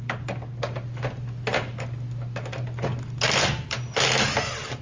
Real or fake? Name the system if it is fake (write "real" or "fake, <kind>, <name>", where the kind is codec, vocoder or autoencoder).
real